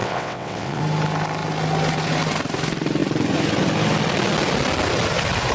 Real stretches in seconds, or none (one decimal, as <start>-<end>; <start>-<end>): 0.8-5.5